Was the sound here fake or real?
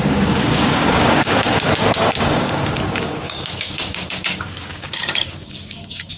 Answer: fake